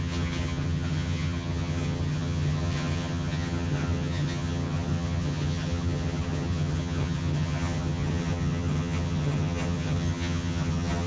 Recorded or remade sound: remade